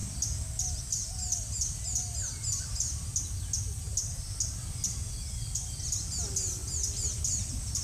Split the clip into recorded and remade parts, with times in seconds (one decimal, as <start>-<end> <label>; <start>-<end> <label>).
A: 0.0-7.8 recorded